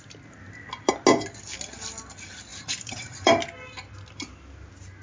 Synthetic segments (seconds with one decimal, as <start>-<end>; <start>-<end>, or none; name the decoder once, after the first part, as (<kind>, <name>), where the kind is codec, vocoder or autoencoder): 2.5-3.3 (vocoder, BigVGAN v2)